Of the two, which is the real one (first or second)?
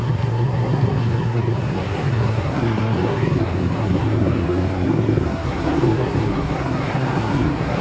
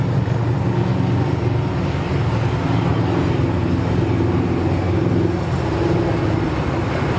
second